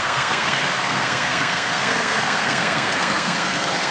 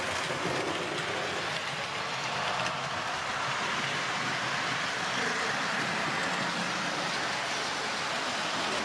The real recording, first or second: second